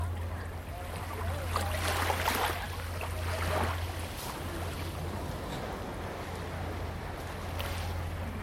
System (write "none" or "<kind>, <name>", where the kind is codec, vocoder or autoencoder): none